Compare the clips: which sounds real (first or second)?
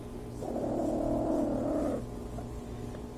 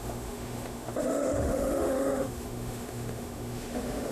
first